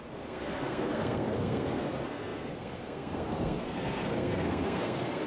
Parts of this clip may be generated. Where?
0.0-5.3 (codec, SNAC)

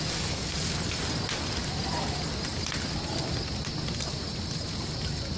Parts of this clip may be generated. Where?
none

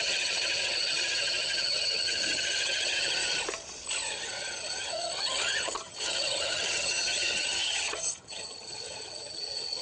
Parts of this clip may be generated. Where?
0.0-3.2 (vocoder, HiFi-GAN); 4.1-9.8